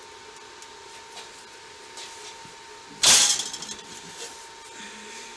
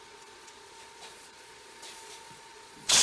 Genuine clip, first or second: first